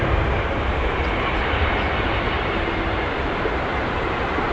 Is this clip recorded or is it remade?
remade